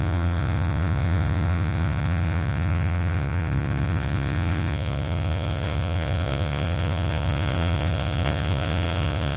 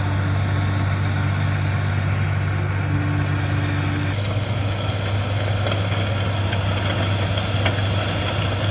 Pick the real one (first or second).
second